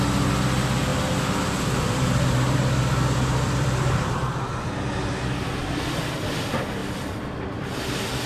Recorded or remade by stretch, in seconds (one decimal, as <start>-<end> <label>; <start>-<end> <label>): 0.0-0.9 recorded; 0.9-4.7 remade; 4.7-6.8 recorded; 6.8-7.8 remade; 7.8-8.3 recorded